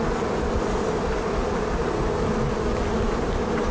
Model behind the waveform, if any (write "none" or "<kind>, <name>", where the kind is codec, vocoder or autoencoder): none